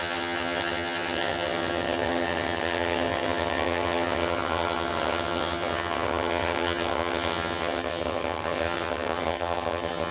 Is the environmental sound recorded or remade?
remade